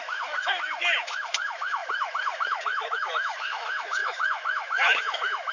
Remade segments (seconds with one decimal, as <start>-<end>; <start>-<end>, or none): 0.0-5.5